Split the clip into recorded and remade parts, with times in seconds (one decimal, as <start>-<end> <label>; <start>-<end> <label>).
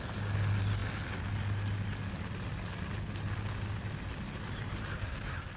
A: 0.0-5.6 recorded